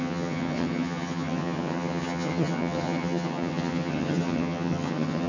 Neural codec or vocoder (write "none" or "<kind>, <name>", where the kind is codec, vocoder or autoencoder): vocoder, HiFi-GAN